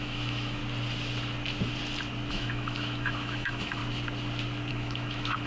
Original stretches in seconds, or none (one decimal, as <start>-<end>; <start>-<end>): 0.6-2.3; 3.8-4.7